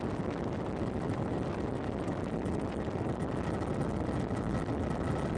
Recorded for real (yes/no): yes